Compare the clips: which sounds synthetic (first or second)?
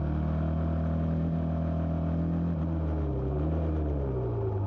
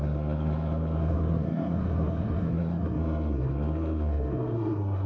second